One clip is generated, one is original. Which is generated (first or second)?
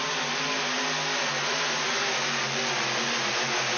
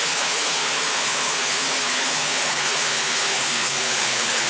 second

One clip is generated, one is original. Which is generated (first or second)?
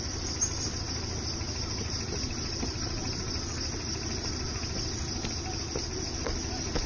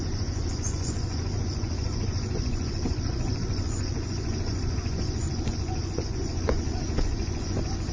second